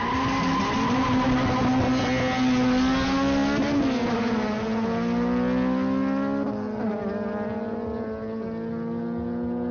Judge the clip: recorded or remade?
recorded